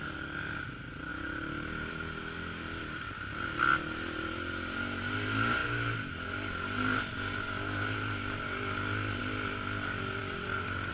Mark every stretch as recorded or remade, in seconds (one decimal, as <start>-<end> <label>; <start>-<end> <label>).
0.0-10.9 recorded